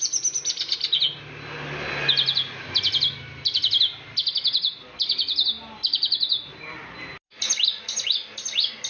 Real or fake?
real